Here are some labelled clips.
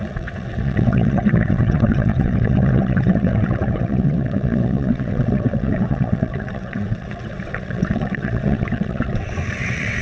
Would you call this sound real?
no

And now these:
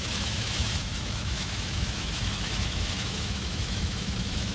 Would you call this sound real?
no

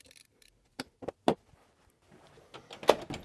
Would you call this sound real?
yes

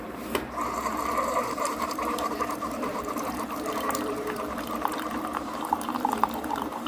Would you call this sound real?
no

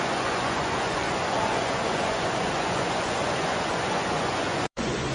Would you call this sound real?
no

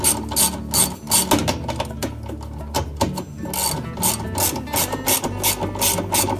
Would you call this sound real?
yes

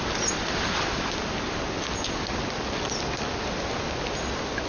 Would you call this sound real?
yes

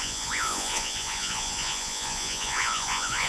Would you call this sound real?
no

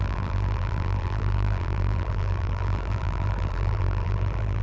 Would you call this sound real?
no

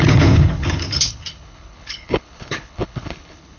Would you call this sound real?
no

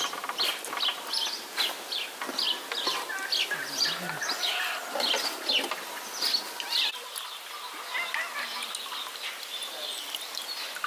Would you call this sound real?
yes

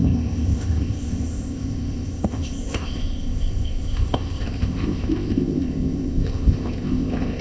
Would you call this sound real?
no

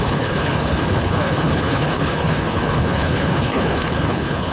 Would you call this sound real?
no